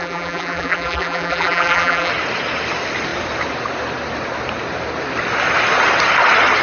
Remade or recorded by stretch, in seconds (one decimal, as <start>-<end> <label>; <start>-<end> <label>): 0.0-2.1 remade; 2.1-6.6 recorded